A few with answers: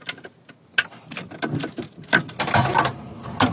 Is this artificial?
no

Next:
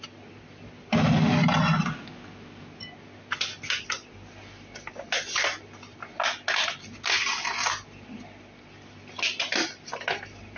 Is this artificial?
no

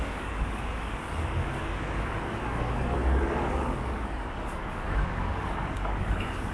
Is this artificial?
yes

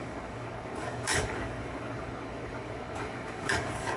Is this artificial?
yes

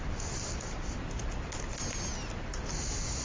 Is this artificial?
no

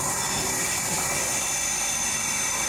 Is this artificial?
no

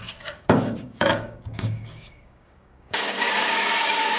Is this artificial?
yes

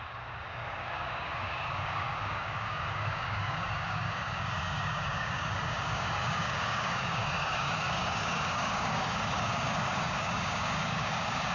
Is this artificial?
yes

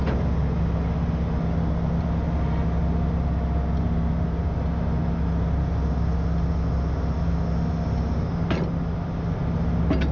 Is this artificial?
no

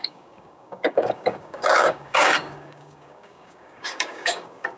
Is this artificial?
yes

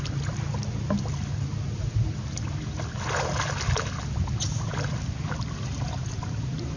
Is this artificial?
no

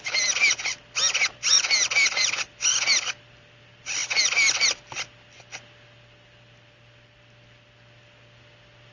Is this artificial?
no